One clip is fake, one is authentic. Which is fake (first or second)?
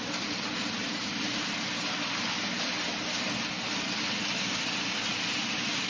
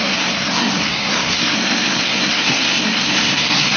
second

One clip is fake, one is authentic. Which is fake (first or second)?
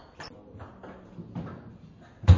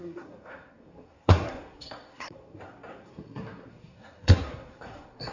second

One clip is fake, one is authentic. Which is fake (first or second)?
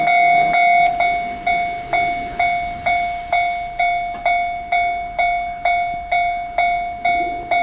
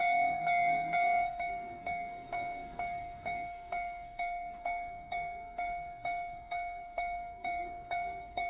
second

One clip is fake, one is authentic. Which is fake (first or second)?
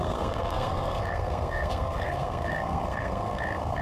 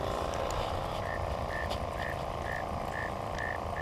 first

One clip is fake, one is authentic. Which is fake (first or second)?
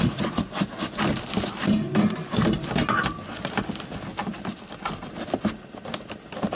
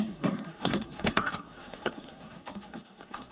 second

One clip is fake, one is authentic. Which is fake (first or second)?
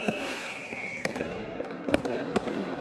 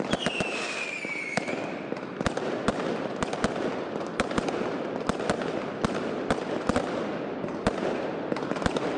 first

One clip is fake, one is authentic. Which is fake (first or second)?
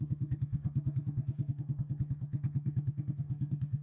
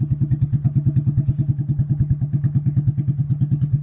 first